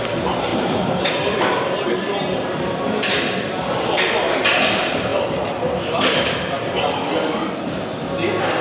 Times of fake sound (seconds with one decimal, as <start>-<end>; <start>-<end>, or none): 0.5-1.1